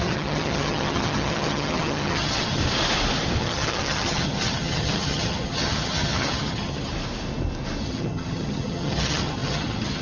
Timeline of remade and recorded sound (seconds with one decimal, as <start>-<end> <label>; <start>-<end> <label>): 0.0-2.6 remade; 2.6-3.4 recorded; 3.4-6.9 remade; 6.9-7.8 recorded; 7.8-10.0 remade

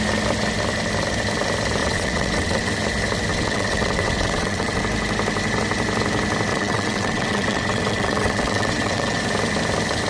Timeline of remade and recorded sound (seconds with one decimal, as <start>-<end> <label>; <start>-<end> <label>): 0.0-1.8 recorded; 1.8-2.7 remade; 2.7-3.3 recorded; 3.3-4.8 remade; 4.8-6.5 recorded; 6.5-9.2 remade; 9.2-10.1 recorded

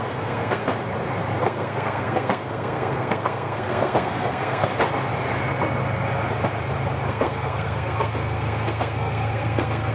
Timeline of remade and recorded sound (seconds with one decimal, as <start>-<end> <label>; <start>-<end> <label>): 0.0-0.6 remade; 0.6-1.4 recorded; 1.4-4.7 remade; 4.7-7.1 recorded; 7.1-9.9 remade

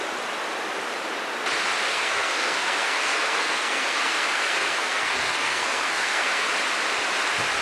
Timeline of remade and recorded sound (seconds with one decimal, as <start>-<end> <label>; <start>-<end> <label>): 0.0-1.9 recorded; 1.9-6.5 remade; 6.5-7.6 recorded

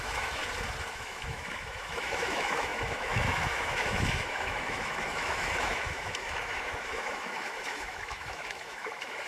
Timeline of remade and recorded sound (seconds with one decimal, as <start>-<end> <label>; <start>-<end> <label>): 0.0-0.4 remade; 0.4-0.9 recorded; 0.9-9.3 remade

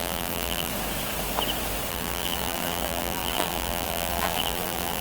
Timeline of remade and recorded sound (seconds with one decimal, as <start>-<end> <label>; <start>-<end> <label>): 0.0-0.7 remade; 0.7-1.9 recorded; 1.9-5.0 remade

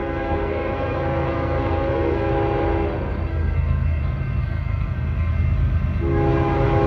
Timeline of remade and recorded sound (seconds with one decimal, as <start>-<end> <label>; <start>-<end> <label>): 0.0-2.3 remade; 2.3-3.3 recorded; 3.3-4.0 remade; 4.0-4.4 recorded; 4.4-5.3 remade; 5.3-6.9 recorded

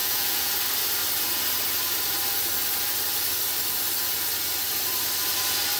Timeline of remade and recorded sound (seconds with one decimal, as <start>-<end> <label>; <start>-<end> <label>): 0.0-0.5 remade; 0.5-5.8 recorded